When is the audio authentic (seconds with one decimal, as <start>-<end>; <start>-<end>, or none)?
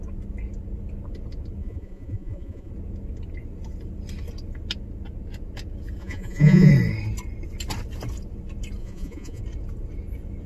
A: 0.0-1.6; 2.7-6.0; 6.7-8.8; 9.4-10.5